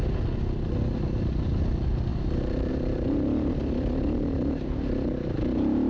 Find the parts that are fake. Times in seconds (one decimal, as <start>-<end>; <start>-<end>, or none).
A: 2.1-2.7